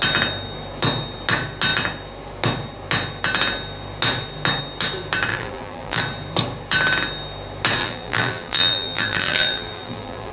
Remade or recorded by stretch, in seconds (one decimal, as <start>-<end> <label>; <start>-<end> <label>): 0.0-5.3 recorded; 5.3-6.0 remade; 6.0-7.8 recorded; 7.8-10.3 remade